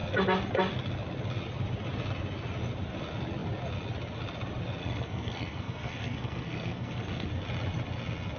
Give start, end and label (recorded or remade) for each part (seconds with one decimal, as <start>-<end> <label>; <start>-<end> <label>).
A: 0.0-4.8 recorded; 4.8-7.3 remade; 7.3-8.4 recorded